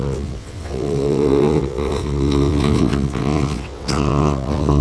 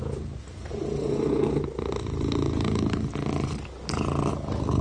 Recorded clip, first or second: second